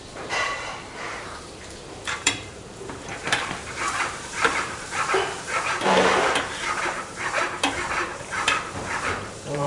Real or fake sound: fake